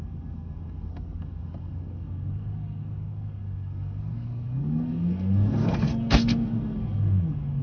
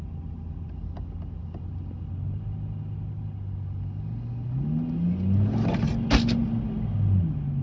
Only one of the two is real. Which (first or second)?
second